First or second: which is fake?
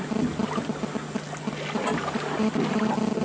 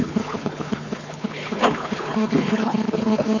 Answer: second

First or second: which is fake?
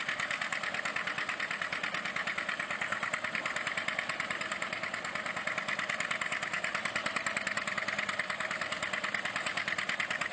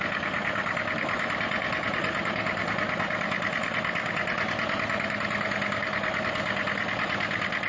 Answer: first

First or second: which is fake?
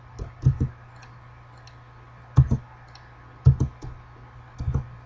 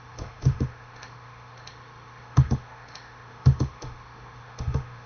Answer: second